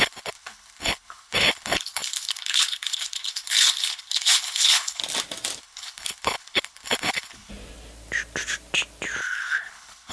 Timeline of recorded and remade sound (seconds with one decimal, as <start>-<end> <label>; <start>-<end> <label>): 0.0-5.0 remade; 5.0-5.6 recorded; 5.6-7.5 remade; 7.5-9.2 recorded; 9.2-10.1 remade